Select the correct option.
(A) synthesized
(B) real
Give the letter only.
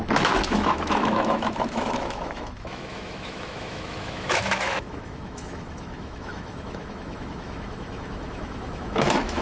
A